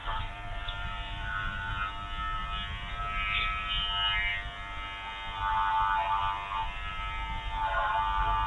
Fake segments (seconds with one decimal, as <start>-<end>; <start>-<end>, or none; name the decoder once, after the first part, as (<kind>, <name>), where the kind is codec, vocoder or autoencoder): 0.0-1.7 (vocoder, BigVGAN v2)

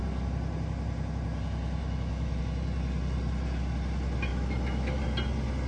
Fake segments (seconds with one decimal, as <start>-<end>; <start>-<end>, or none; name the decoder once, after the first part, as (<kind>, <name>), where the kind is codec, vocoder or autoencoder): 1.8-2.4 (autoencoder, DAC-VAE); 4.3-5.0